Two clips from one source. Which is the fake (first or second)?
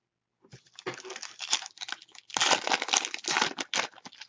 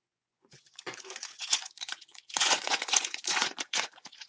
second